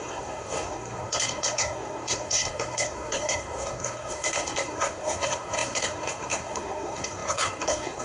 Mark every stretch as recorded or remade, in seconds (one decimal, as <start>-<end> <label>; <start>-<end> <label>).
0.0-8.0 remade